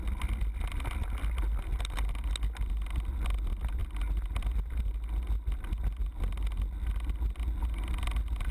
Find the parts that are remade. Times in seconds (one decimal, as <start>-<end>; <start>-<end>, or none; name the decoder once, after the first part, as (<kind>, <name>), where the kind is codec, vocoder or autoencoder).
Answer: none